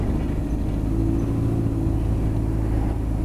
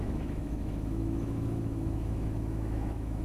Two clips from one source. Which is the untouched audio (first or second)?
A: first